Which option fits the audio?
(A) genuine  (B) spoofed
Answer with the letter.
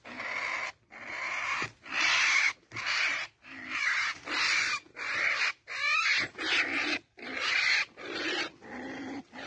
A